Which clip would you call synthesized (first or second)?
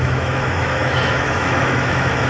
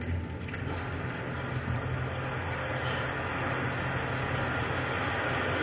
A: first